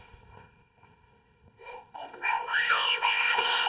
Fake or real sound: fake